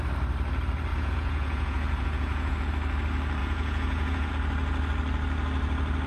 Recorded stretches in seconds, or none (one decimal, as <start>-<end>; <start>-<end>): 0.0-0.9; 2.7-3.4; 4.3-6.1